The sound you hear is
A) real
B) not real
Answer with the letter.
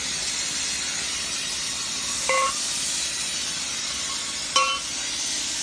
A